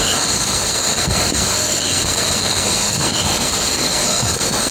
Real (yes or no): no